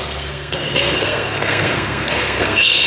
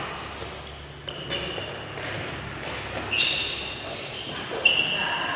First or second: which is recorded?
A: second